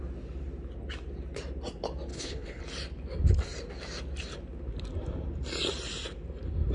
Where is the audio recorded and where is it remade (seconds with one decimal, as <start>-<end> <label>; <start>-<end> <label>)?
0.0-2.1 recorded; 2.1-2.6 remade; 2.6-6.7 recorded